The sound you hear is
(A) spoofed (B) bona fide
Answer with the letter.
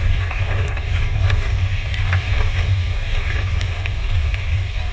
A